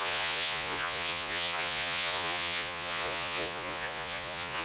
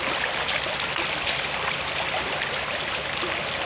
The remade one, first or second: first